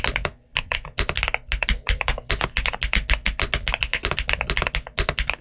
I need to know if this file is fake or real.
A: real